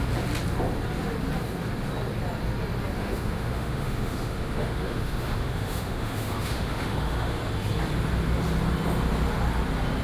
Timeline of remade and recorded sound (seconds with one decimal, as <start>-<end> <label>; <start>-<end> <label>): 0.0-3.0 recorded; 3.0-7.4 remade; 7.4-10.0 recorded